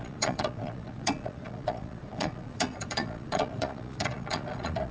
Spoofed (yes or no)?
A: yes